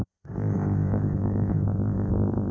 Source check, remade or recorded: remade